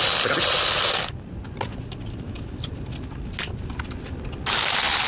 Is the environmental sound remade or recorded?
recorded